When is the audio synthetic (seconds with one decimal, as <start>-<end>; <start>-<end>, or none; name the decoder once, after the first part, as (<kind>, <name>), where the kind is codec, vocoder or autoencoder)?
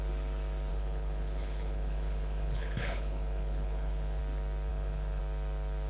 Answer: 0.7-4.2 (codec, HILCodec); 4.7-5.2